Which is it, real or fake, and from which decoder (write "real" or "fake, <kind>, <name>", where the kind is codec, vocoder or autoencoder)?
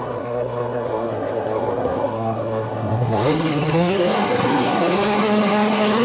fake, codec, SNAC